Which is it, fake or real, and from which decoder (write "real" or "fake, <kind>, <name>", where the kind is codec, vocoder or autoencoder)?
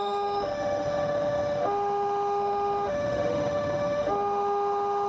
fake, autoencoder, DAC-VAE